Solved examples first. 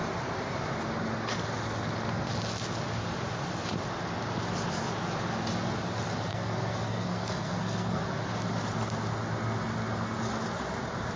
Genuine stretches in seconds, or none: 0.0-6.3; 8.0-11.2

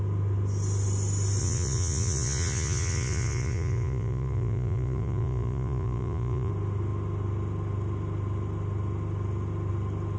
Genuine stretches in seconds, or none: 0.0-1.4; 6.5-10.2

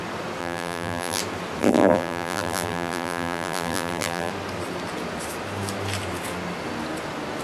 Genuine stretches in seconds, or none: 0.0-0.4; 1.2-1.6; 4.3-7.4

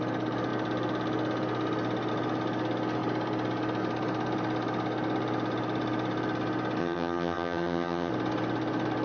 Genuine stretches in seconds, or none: 0.0-6.8; 8.1-9.0

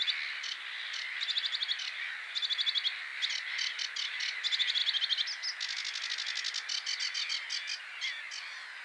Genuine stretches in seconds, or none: 0.0-8.8

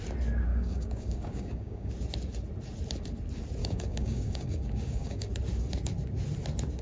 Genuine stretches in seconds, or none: 0.0-0.5; 1.9-3.6; 5.3-6.8